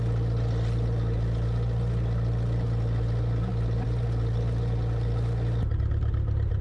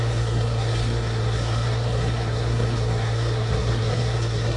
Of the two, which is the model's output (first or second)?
second